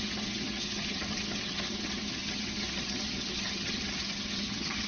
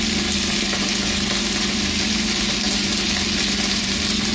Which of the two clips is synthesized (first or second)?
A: first